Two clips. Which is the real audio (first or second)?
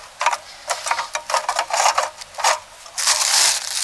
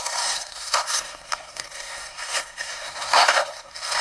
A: first